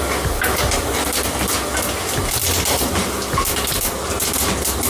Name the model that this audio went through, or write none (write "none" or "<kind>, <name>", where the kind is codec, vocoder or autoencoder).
none